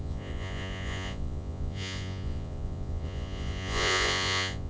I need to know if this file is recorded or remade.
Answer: remade